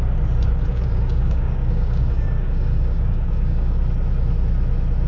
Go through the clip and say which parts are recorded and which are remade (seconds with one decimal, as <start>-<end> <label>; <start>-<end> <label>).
0.0-0.7 recorded; 0.7-3.8 remade; 3.8-5.1 recorded